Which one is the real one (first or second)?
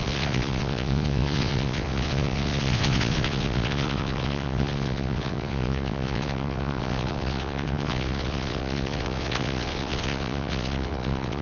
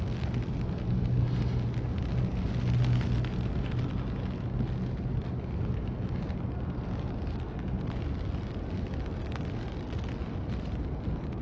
second